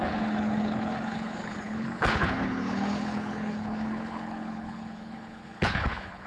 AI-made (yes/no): yes